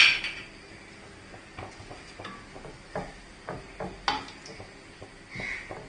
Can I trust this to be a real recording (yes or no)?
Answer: yes